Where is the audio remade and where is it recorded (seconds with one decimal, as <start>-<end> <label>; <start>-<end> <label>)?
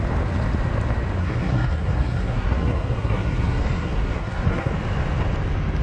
0.0-1.2 recorded; 1.2-4.7 remade; 4.7-5.8 recorded